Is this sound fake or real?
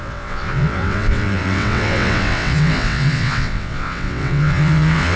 fake